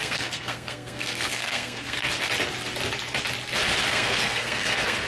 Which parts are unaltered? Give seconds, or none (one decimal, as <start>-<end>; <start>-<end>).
2.0-3.9